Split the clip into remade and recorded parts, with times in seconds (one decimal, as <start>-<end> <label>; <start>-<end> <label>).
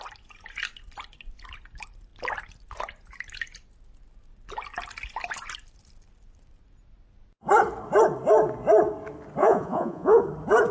0.0-9.4 recorded; 9.4-10.2 remade; 10.2-10.7 recorded